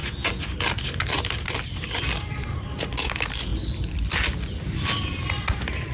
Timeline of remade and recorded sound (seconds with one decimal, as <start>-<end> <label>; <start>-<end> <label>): 0.0-3.5 recorded; 3.5-5.4 remade; 5.4-5.9 recorded